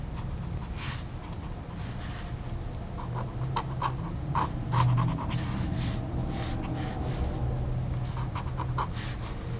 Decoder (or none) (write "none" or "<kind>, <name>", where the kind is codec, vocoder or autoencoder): none